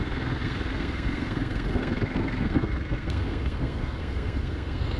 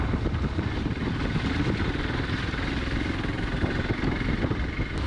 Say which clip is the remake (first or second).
first